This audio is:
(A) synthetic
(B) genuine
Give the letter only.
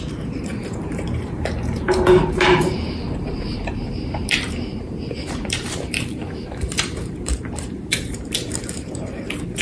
A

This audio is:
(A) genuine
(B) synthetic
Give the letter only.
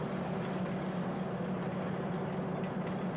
A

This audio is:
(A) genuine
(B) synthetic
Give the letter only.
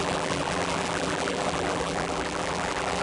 B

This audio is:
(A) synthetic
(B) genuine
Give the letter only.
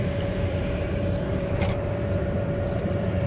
A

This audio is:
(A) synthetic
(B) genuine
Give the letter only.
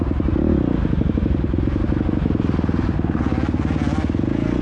B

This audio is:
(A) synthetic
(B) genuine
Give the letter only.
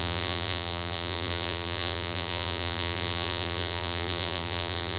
A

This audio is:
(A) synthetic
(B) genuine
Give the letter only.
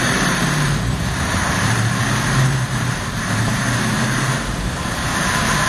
A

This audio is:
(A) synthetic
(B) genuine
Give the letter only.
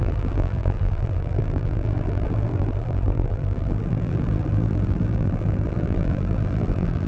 A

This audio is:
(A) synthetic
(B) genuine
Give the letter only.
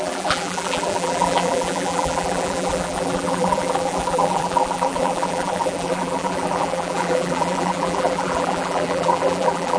A